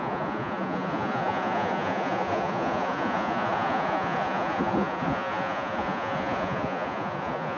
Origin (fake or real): fake